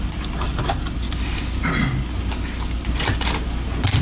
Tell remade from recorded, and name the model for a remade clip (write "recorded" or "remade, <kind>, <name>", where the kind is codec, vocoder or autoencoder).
recorded